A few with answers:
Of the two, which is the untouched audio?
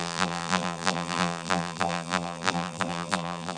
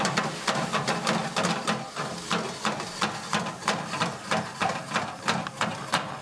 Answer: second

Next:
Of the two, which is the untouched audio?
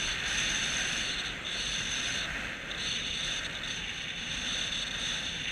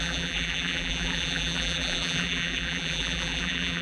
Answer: first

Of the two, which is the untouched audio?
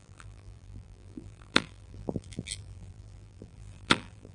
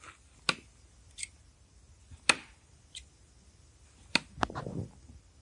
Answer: second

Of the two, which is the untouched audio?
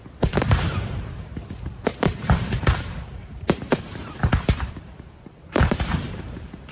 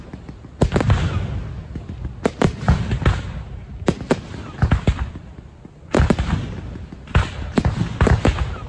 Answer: second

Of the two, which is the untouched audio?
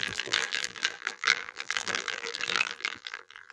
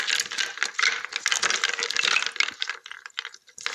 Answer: second